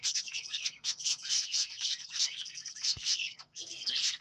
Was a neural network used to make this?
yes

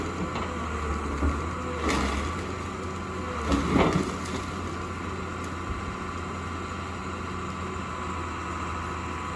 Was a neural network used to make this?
no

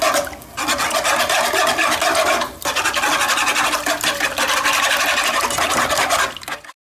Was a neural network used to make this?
no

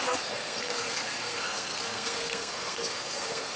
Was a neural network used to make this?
yes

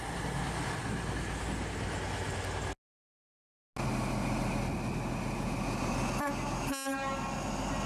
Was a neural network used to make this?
no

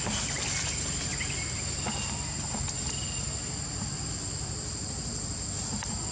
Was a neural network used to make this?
no